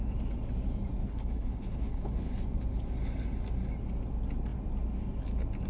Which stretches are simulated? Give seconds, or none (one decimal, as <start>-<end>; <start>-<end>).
1.0-2.3